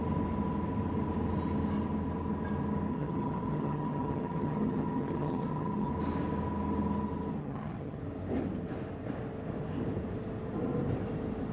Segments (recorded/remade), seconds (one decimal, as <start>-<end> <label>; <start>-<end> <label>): 0.0-2.9 recorded; 2.9-5.9 remade; 5.9-7.4 recorded; 7.4-8.0 remade; 8.0-11.5 recorded